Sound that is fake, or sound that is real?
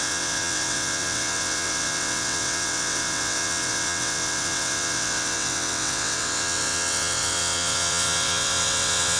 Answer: fake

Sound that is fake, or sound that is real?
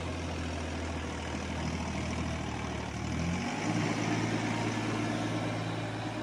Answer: real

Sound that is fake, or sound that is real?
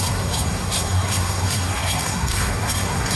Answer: fake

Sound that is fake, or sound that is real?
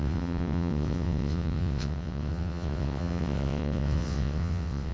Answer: fake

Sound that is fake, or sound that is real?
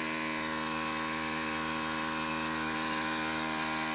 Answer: real